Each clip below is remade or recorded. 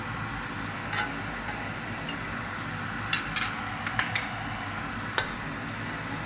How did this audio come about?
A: recorded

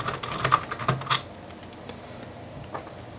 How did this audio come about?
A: recorded